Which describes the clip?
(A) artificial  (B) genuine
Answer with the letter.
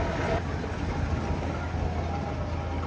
B